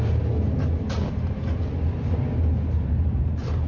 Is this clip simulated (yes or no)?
no